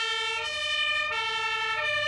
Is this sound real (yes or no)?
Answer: yes